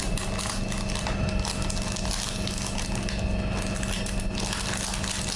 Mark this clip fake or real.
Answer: real